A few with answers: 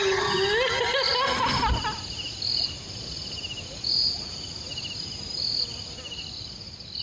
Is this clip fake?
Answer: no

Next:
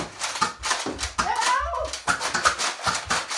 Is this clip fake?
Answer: no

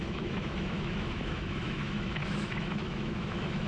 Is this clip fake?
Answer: yes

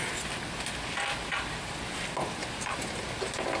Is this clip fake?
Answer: no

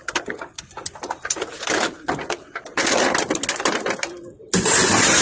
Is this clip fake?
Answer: no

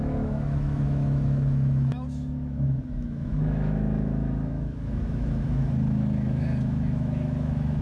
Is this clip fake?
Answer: yes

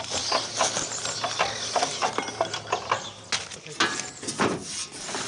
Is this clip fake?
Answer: no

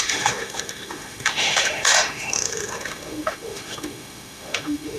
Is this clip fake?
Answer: yes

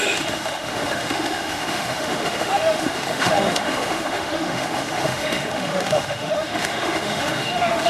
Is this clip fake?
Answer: yes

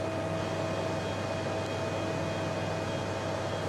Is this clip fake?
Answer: no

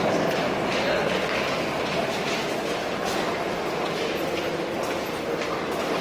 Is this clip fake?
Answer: no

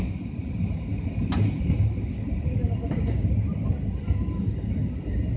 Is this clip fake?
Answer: no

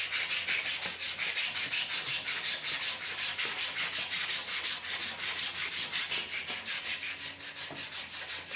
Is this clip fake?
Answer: no